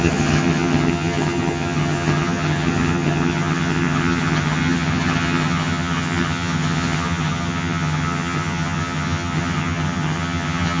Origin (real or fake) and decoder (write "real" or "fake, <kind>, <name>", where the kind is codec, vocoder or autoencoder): fake, vocoder, HiFi-GAN